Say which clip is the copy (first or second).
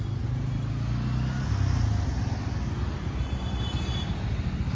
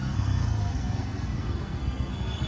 second